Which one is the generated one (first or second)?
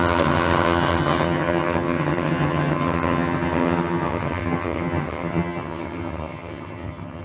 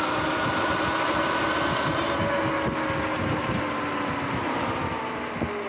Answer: first